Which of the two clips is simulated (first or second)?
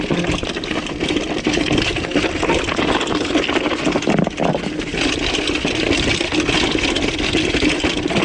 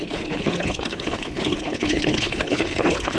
second